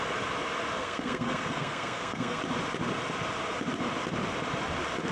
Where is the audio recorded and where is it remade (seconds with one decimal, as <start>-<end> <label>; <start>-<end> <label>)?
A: 0.0-0.8 recorded; 0.8-2.4 remade; 2.4-5.1 recorded